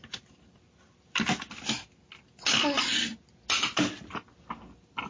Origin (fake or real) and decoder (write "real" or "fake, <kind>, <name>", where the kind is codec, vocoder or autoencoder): real